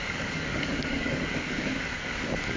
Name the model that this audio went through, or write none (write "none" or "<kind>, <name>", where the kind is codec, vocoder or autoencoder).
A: codec, DAC